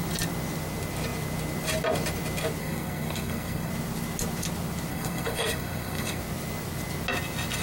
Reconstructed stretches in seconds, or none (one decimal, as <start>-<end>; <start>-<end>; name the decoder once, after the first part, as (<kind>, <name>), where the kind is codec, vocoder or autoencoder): 2.6-3.7 (codec, SNAC); 4.9-6.2